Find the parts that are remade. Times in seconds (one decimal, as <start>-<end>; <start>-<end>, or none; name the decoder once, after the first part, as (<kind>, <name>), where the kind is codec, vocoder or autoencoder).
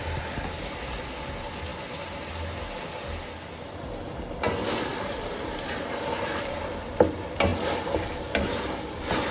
4.9-6.7 (vocoder, BigVGAN v2)